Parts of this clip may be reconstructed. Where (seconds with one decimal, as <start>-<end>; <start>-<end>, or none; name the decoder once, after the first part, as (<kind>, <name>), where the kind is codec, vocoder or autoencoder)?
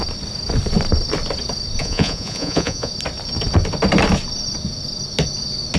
1.8-2.9 (vocoder, Vocos)